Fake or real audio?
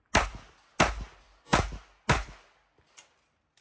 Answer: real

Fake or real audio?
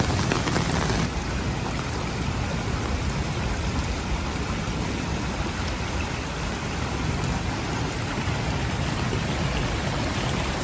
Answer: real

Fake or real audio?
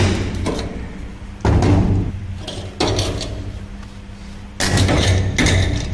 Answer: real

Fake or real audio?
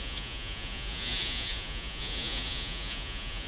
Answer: fake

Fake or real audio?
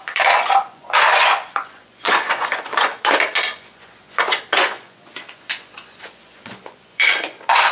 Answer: fake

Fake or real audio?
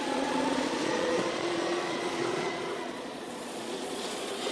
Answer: fake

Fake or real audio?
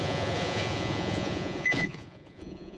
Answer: fake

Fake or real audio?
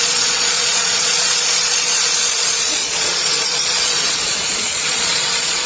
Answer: fake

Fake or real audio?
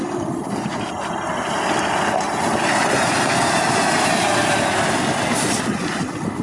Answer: real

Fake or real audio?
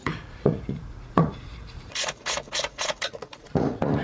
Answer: fake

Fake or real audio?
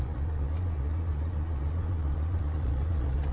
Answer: fake